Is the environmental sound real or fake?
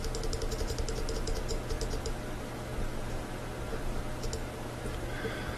real